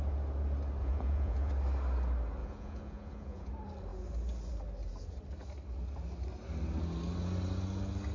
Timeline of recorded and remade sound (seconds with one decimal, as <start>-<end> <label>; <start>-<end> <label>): 0.0-0.8 recorded; 0.8-1.5 remade; 1.5-2.4 recorded; 2.4-3.5 remade; 3.5-8.1 recorded